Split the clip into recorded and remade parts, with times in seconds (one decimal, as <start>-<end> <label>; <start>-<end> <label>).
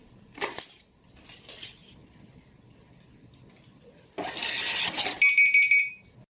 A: 0.0-6.3 recorded